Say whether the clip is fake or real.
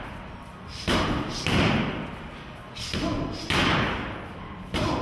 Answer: real